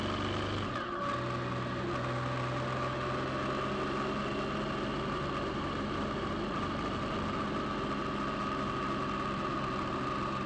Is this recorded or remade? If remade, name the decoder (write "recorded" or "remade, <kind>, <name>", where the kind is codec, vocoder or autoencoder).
recorded